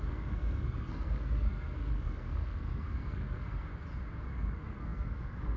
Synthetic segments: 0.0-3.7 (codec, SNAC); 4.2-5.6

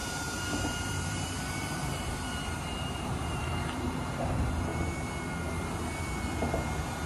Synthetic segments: 0.0-4.3 (vocoder, BigVGAN v2)

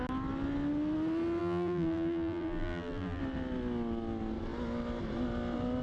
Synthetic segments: 1.4-3.2 (vocoder, BigVGAN v2)

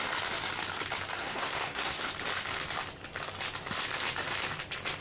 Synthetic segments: 1.2-2.1 (codec, SNAC)

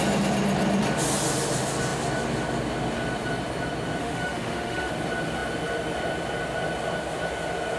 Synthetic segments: 4.0-4.9 (autoencoder, DAC-VAE)

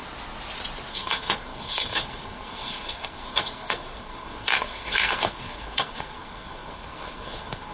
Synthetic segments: 0.9-7.7 (codec, SNAC)